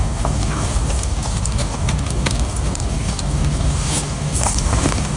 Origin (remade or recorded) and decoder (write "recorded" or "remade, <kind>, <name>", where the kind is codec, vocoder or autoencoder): remade, codec, DAC